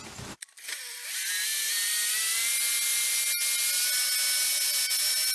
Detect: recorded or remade recorded